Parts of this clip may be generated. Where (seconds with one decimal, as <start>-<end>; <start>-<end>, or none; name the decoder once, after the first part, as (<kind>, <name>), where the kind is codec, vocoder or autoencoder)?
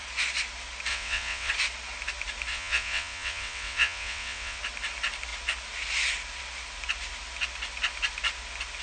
0.9-1.5 (vocoder, WaveNeXt); 2.5-4.6